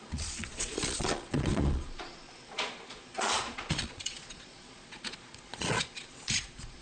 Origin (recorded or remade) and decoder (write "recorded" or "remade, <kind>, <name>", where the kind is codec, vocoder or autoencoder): remade, vocoder, Vocos